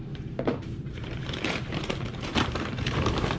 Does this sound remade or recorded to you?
remade